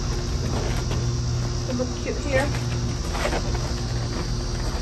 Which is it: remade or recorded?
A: recorded